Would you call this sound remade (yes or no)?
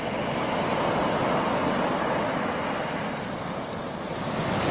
no